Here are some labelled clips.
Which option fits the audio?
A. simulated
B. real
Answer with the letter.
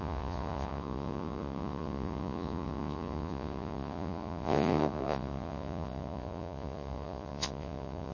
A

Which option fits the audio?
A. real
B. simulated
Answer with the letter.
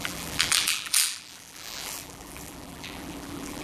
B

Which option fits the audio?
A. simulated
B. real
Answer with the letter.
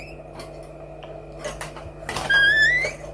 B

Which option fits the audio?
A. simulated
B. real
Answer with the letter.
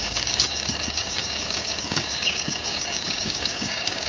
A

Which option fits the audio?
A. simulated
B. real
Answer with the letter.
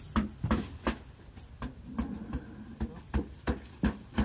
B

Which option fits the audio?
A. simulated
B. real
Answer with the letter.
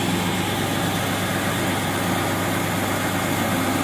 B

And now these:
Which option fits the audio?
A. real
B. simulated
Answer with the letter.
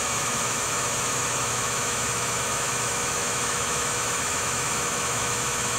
B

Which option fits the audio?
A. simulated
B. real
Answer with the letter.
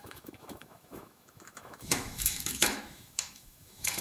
A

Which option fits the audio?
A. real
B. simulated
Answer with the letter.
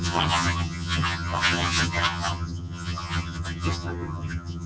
B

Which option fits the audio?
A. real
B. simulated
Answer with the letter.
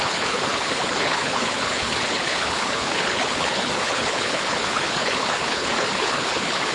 B